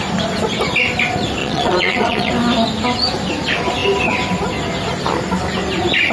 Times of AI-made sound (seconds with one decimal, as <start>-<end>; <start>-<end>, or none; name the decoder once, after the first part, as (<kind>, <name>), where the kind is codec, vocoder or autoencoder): 1.4-2.3 (vocoder, Vocos)